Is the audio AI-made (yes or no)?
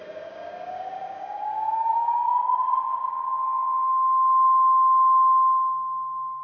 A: yes